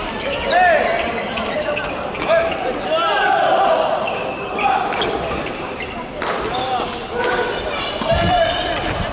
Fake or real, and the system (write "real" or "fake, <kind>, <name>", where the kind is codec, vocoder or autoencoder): fake, vocoder, BigVGAN v2